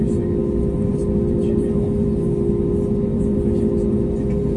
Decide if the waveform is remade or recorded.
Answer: recorded